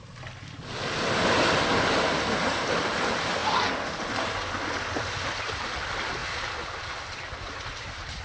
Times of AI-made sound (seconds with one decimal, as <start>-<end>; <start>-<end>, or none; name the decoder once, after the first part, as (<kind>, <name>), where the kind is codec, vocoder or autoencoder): 0.0-3.4 (vocoder, BigVGAN v2); 5.5-6.2; 6.7-8.2